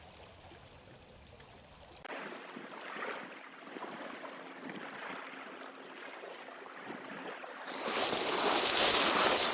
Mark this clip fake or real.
real